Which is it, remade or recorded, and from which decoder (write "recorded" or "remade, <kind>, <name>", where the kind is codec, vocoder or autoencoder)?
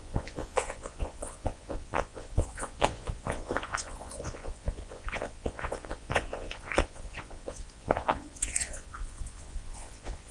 remade, vocoder, Vocos